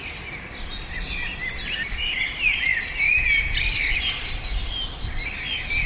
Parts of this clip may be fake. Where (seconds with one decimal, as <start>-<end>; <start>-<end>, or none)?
none